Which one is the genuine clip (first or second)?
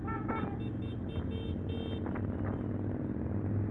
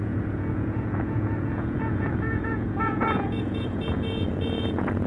first